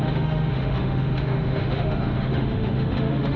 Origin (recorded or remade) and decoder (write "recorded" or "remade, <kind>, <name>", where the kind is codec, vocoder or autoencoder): remade, autoencoder, DAC-VAE